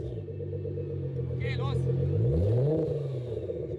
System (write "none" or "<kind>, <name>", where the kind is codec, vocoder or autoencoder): none